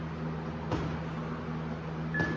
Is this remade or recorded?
recorded